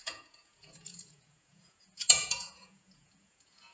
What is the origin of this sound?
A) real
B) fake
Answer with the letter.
B